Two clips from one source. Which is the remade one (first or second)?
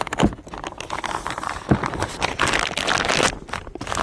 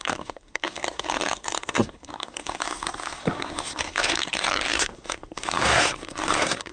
second